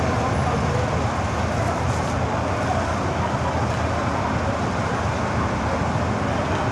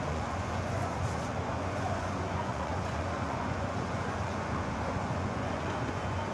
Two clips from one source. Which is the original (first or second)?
first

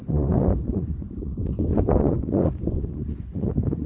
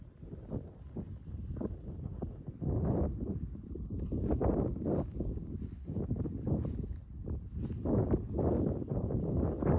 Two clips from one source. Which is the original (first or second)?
second